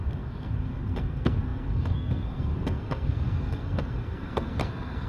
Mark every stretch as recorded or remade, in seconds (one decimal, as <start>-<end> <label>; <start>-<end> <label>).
0.0-5.1 remade